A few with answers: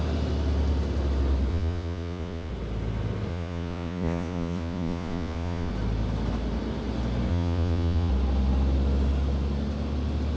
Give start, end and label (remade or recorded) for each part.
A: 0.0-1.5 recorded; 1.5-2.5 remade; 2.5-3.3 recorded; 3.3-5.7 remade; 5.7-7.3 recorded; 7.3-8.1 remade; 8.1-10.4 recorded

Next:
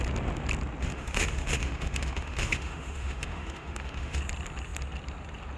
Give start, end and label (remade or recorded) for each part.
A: 0.0-0.8 recorded; 0.8-4.2 remade; 4.2-5.6 recorded